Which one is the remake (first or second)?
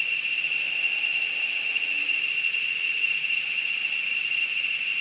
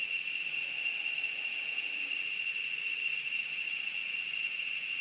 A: second